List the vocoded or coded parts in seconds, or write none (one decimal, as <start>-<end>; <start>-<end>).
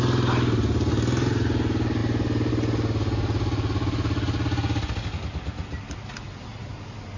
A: none